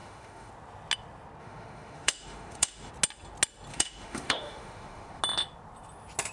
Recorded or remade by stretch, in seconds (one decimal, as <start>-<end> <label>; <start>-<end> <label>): 0.0-0.5 remade; 0.5-1.4 recorded; 1.4-2.9 remade; 2.9-3.7 recorded; 3.7-5.2 remade; 5.2-6.3 recorded